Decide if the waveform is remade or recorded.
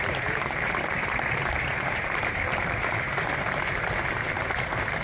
remade